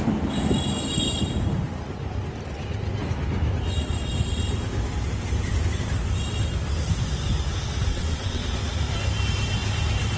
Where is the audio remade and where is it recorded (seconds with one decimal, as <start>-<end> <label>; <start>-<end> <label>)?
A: 0.0-7.9 recorded; 7.9-8.4 remade; 8.4-10.2 recorded